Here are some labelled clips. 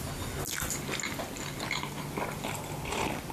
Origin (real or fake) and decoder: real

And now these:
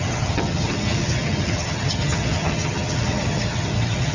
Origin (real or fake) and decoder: fake, vocoder, HiFi-GAN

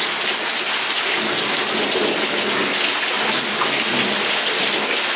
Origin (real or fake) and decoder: real